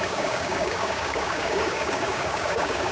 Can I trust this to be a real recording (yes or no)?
no